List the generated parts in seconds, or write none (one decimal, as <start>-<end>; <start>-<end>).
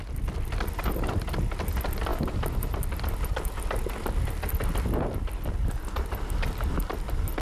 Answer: none